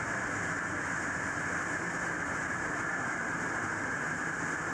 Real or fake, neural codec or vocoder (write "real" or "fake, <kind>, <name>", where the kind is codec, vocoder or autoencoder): real